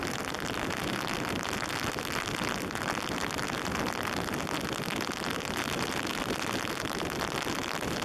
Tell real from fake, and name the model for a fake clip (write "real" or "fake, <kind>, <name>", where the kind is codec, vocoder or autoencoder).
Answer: real